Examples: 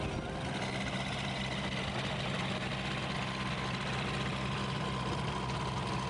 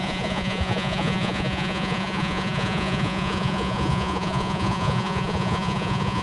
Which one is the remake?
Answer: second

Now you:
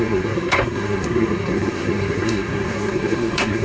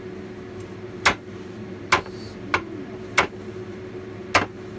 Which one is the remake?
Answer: first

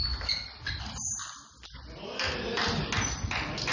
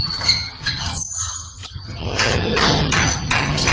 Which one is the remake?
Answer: second